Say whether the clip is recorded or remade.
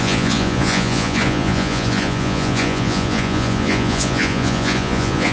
remade